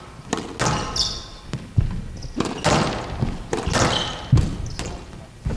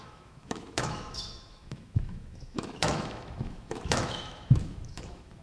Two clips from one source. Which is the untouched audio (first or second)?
first